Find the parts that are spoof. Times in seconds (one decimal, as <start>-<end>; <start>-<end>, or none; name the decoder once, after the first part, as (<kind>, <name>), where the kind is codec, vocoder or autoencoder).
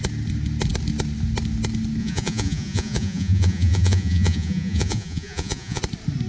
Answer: 2.0-5.8 (vocoder, Vocos)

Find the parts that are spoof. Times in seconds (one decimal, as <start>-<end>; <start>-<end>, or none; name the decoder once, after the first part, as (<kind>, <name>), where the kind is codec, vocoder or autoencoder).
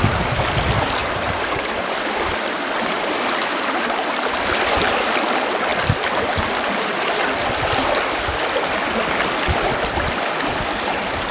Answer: none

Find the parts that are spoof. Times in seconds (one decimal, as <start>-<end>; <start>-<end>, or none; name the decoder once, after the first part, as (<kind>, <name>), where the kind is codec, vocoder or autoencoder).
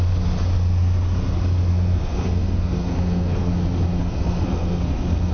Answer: 1.7-3.5 (codec, SNAC); 4.0-5.3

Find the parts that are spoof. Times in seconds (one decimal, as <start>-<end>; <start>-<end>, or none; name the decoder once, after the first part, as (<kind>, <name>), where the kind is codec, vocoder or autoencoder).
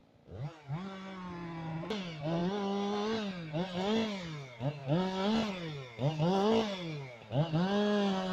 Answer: 0.0-0.7 (vocoder, BigVGAN v2)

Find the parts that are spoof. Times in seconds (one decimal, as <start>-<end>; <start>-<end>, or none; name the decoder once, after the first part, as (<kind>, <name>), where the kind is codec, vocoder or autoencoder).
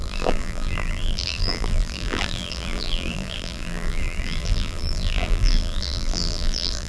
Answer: 0.0-6.9 (vocoder, BigVGAN v2)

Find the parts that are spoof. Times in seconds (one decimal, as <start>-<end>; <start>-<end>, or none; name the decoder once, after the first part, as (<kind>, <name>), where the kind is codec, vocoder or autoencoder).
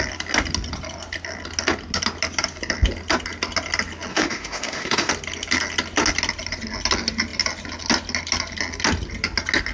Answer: 4.1-5.1 (autoencoder, DAC-VAE)